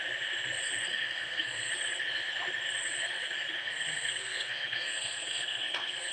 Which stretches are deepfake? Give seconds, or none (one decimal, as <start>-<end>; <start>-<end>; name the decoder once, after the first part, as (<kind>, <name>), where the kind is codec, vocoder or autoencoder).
0.9-1.7 (codec, SNAC); 3.6-6.1